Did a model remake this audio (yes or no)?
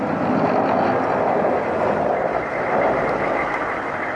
no